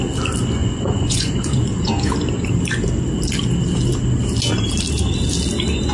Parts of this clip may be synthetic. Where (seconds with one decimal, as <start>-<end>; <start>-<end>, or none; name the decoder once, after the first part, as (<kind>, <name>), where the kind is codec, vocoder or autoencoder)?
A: 0.6-2.1 (vocoder, Vocos)